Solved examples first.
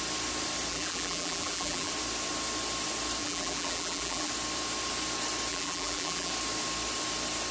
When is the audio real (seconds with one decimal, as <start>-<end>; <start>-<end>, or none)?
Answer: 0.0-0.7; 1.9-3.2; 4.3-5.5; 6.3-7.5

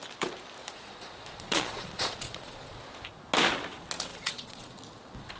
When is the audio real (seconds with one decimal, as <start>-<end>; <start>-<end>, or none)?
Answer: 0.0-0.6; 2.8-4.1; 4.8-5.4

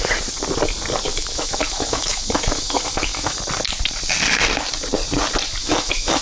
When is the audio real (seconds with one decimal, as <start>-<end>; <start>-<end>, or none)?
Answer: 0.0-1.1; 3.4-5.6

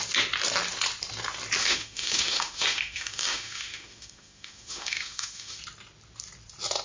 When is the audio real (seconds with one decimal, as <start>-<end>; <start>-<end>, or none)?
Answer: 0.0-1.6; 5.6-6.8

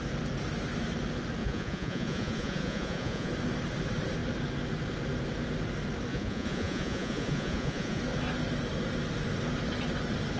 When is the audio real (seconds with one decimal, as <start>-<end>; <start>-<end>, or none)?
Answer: 0.0-1.4; 3.3-6.1; 8.0-10.4

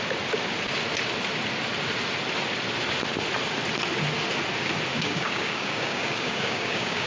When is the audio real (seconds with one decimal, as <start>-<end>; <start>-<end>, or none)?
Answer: 0.0-4.9